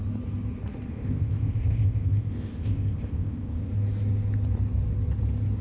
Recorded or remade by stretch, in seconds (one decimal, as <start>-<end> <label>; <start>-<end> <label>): 0.0-0.9 recorded; 0.9-3.7 remade; 3.7-5.6 recorded